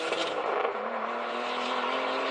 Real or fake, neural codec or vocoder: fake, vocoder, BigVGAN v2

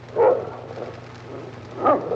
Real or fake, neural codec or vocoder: real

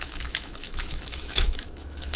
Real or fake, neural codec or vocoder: fake, autoencoder, DAC-VAE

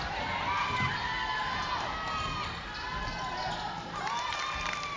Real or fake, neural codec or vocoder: real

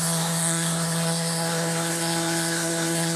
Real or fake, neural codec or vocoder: fake, codec, SNAC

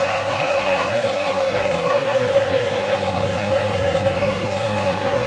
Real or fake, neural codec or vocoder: fake, codec, SNAC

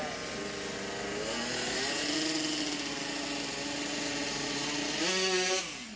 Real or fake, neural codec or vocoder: real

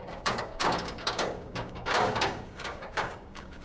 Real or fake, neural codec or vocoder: fake, codec, DAC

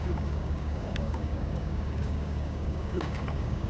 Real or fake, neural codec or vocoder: fake, codec, DAC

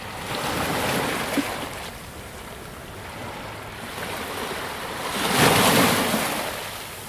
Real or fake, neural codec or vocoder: real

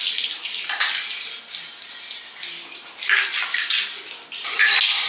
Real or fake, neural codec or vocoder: real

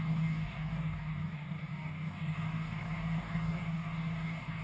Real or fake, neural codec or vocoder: fake, codec, DAC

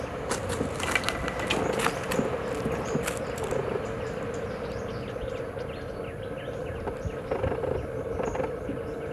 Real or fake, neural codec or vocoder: real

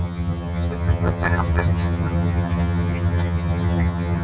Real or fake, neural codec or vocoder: fake, vocoder, HiFi-GAN